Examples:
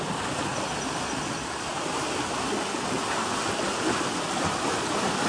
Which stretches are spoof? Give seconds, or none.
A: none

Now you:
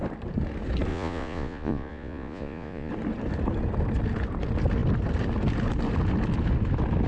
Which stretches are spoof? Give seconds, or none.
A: 0.9-2.9 (vocoder, Vocos)

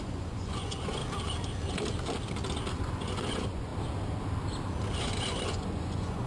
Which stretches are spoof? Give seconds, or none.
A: 0.0-1.0 (vocoder, Vocos); 2.8-3.7; 5.0-6.3

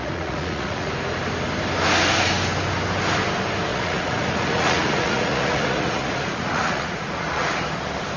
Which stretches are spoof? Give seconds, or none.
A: 0.0-0.9 (vocoder, Vocos); 3.7-7.5

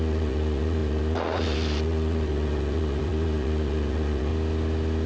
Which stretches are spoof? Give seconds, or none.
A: 0.0-4.3 (vocoder, Vocos)

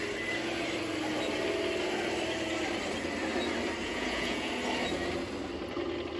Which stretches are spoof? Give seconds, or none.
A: 3.8-4.5 (vocoder, Vocos)

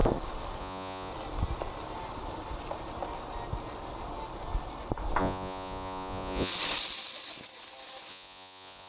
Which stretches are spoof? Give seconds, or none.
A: 0.6-1.1 (vocoder, Vocos); 5.2-6.5; 8.1-8.9

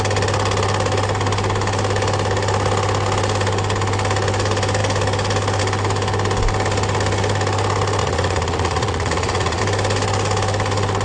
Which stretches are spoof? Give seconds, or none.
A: 8.0-9.6 (vocoder, Vocos)